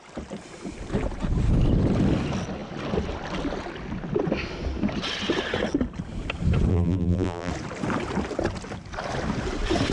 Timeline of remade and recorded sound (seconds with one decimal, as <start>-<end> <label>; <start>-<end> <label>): 0.0-6.7 recorded; 6.7-7.5 remade; 7.5-9.9 recorded